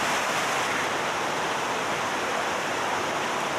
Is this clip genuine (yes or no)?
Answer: yes